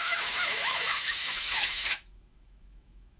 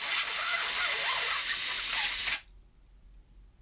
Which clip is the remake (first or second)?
first